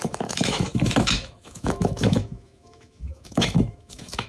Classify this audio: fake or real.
fake